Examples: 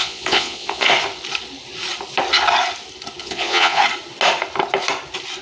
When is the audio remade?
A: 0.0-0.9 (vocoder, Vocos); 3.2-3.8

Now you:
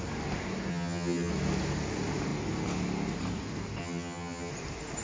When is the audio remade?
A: 0.7-1.3 (vocoder, HiFi-GAN); 3.8-4.5